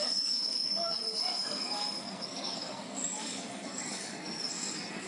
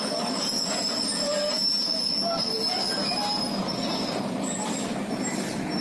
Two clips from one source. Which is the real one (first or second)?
second